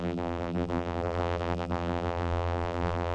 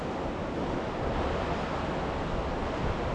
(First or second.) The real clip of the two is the second